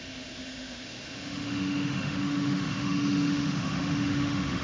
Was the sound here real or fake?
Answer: fake